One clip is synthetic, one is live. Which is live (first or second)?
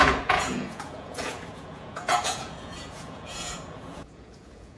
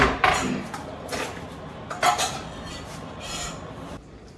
second